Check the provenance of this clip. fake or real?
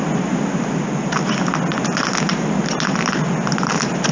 real